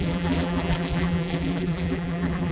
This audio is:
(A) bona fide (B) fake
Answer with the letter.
B